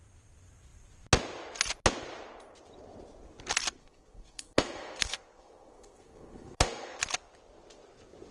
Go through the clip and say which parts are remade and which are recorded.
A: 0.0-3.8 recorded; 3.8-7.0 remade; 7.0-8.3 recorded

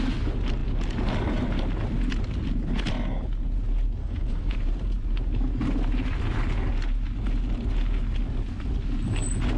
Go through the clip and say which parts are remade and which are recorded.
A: 0.0-4.0 recorded; 4.0-4.5 remade; 4.5-9.6 recorded

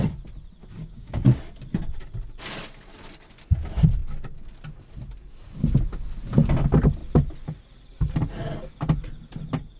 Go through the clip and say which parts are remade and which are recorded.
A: 0.0-0.6 recorded; 0.6-1.4 remade; 1.4-9.8 recorded

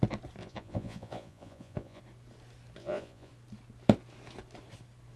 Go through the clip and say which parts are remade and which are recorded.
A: 0.0-0.4 recorded; 0.4-2.0 remade; 2.0-2.8 recorded; 2.8-3.3 remade; 3.3-5.2 recorded

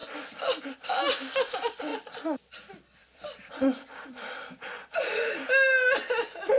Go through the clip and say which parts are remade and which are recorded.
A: 0.0-3.0 recorded; 3.0-5.3 remade; 5.3-6.6 recorded

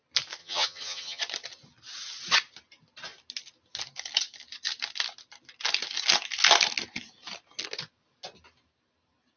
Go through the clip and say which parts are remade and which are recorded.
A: 0.0-0.4 recorded; 0.4-1.2 remade; 1.2-9.4 recorded

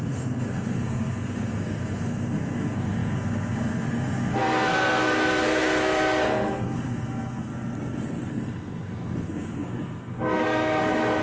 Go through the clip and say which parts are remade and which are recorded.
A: 0.0-7.5 remade; 7.5-8.3 recorded; 8.3-11.2 remade

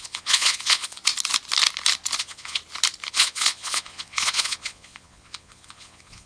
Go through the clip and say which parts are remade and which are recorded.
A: 0.0-1.0 remade; 1.0-2.2 recorded; 2.2-2.6 remade; 2.6-3.1 recorded; 3.1-6.3 remade